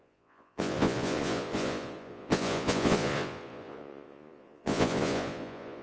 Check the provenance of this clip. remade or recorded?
remade